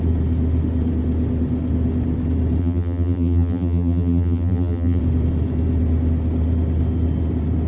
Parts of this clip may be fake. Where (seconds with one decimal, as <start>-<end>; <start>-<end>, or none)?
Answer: 2.6-5.0